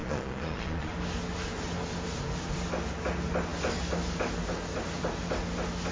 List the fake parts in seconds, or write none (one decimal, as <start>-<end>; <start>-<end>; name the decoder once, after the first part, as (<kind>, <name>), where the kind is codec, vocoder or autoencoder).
0.0-0.9 (vocoder, Vocos)